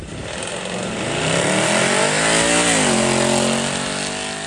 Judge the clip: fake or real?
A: real